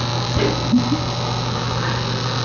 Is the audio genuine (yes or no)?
yes